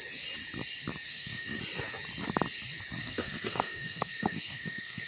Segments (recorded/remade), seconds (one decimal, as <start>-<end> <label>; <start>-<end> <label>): 0.0-1.1 recorded; 1.1-1.6 remade; 1.6-3.0 recorded; 3.0-5.1 remade